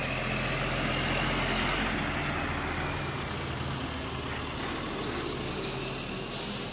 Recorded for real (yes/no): yes